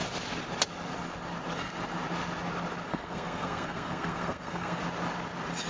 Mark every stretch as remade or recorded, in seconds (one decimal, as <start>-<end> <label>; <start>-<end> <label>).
0.0-2.9 recorded; 2.9-4.8 remade; 4.8-5.7 recorded